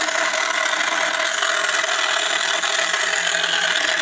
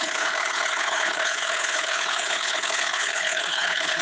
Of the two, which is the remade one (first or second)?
second